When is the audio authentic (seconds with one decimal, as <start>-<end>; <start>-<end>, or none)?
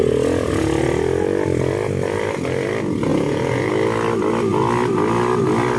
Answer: 0.0-3.1; 3.7-5.8